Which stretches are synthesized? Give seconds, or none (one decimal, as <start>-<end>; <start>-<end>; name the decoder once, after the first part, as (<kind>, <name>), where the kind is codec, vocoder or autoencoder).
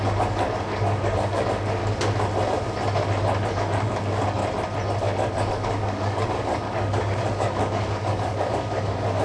0.0-1.8 (codec, DAC); 3.5-4.4; 5.0-9.2